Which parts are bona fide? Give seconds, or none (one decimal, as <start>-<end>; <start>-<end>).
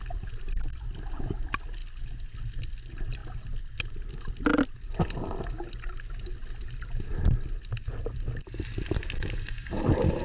0.0-10.2